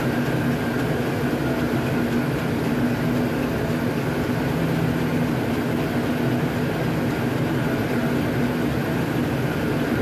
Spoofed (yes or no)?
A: no